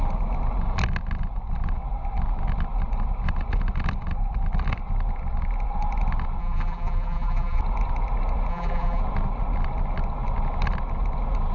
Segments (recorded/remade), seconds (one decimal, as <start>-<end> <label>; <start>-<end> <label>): 0.0-6.4 recorded; 6.4-7.6 remade; 7.6-8.5 recorded; 8.5-9.0 remade; 9.0-11.5 recorded